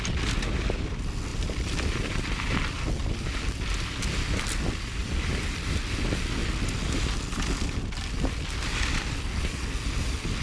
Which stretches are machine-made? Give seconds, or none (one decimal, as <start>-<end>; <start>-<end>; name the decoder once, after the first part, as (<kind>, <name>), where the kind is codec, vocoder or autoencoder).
1.3-2.9 (vocoder, BigVGAN v2); 5.0-5.8